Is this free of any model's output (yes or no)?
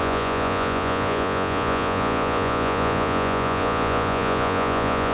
no